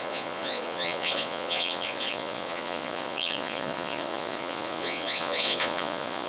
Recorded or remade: remade